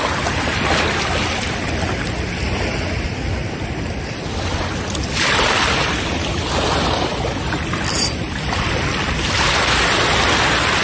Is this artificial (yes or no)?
no